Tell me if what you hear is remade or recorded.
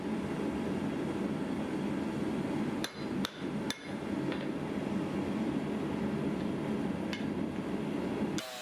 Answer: recorded